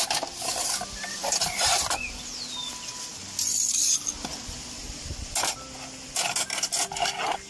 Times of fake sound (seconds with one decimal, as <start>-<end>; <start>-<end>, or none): none